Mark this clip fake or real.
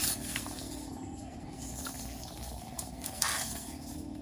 fake